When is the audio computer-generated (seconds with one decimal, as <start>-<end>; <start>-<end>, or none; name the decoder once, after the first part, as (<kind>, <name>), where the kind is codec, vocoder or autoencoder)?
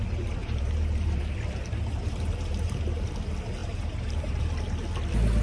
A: 0.4-1.2 (vocoder, BigVGAN v2); 1.7-2.8; 3.6-4.4